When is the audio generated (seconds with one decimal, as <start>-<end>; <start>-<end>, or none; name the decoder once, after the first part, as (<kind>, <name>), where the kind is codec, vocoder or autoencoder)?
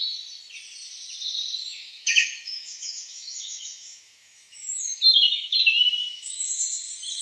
1.6-5.6 (autoencoder, DAC-VAE); 6.1-6.6